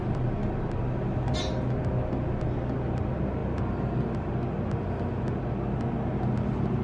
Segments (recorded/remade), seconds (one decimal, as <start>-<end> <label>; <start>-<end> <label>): 0.0-6.8 recorded